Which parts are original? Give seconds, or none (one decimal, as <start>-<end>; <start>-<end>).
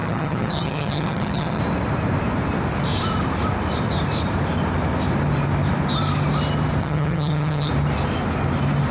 1.6-6.8; 7.7-8.9